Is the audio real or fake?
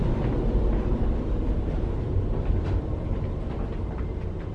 fake